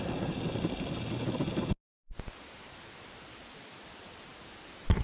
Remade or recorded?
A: recorded